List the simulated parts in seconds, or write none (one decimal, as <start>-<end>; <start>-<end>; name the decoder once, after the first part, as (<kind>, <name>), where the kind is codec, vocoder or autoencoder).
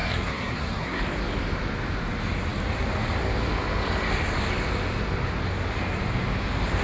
0.0-1.0 (codec, SNAC)